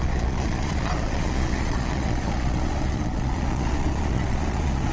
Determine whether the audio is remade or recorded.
remade